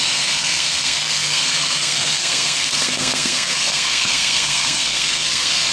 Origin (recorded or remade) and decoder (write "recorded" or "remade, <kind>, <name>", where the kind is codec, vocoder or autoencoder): remade, codec, SNAC